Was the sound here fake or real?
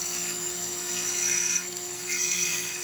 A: fake